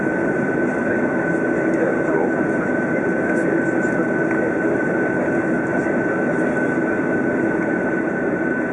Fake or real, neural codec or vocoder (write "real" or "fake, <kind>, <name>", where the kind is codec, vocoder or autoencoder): real